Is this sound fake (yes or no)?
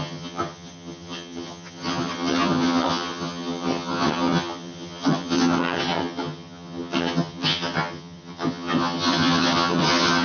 yes